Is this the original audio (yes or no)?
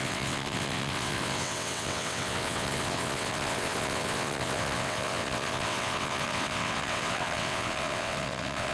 no